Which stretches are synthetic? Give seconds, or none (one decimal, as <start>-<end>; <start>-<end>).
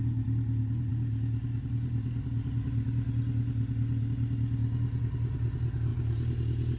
none